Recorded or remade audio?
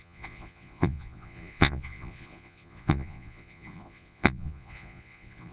remade